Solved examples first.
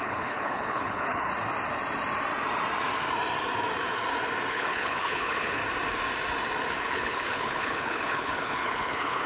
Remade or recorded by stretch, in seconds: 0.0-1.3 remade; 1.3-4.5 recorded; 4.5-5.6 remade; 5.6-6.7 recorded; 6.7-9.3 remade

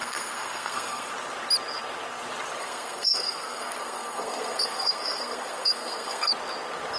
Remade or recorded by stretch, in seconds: 0.0-1.1 remade; 1.1-2.6 recorded; 2.6-6.3 remade; 6.3-7.0 recorded

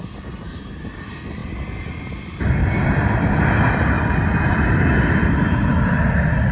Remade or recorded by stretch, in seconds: 0.0-6.5 recorded

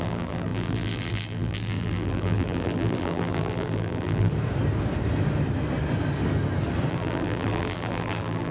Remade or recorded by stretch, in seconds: 0.0-4.3 remade; 4.3-6.9 recorded; 6.9-8.5 remade

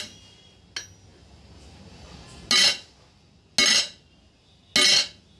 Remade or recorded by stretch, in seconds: 0.0-5.4 recorded

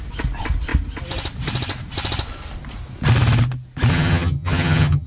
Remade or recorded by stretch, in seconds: 0.0-3.9 recorded; 3.9-5.1 remade

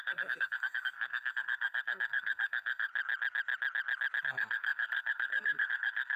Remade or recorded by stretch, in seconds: 0.0-2.9 remade; 2.9-4.2 recorded; 4.2-6.2 remade

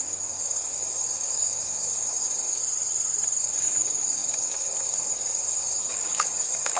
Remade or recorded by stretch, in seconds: 0.0-2.6 remade; 2.6-3.4 recorded; 3.4-6.8 remade